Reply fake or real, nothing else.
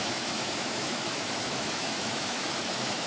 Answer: fake